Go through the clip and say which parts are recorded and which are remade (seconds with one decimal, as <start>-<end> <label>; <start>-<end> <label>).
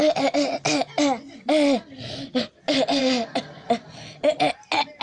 0.0-5.0 recorded